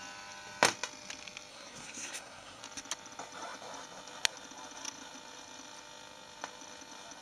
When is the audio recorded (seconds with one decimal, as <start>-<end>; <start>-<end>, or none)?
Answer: 0.0-1.5; 2.6-7.2